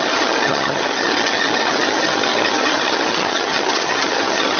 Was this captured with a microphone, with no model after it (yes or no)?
no